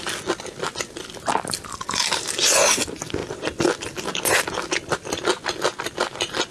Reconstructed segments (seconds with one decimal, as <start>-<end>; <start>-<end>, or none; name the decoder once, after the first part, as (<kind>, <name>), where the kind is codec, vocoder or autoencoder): none